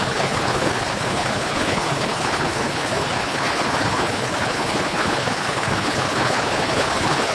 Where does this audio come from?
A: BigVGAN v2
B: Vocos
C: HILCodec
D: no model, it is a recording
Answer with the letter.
C